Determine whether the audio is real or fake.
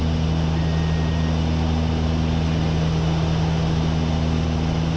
real